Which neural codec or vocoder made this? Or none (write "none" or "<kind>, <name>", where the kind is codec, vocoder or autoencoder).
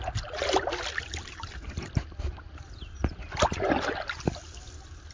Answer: none